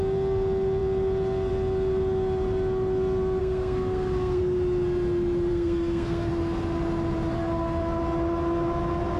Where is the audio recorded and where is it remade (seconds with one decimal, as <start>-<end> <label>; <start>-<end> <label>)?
0.0-3.4 recorded; 3.4-4.4 remade; 4.4-5.5 recorded; 5.5-6.3 remade; 6.3-9.2 recorded

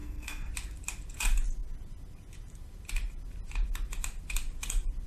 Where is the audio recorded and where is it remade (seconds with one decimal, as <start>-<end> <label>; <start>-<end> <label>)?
0.0-0.5 remade; 0.5-5.1 recorded